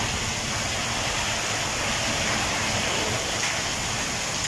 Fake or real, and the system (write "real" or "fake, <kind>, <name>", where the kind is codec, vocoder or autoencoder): real